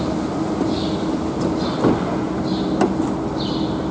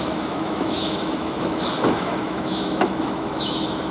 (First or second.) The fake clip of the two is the second